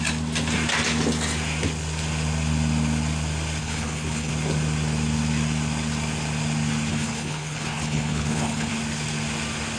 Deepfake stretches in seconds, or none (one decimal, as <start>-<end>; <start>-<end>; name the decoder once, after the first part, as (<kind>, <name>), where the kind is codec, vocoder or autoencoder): 3.6-4.3 (codec, HILCodec); 6.9-8.7